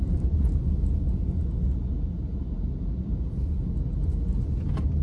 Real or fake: real